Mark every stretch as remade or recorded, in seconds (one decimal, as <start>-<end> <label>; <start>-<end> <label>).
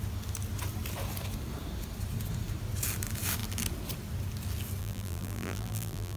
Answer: 0.0-4.8 recorded; 4.8-6.2 remade